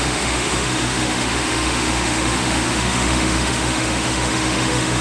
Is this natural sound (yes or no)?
no